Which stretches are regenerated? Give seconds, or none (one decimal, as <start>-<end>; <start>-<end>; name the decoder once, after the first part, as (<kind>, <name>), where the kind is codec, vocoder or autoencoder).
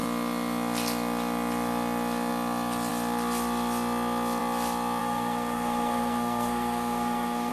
5.0-7.5 (codec, SNAC)